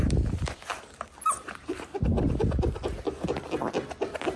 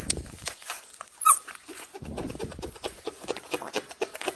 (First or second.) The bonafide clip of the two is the first